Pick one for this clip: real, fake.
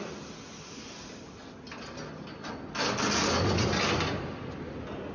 real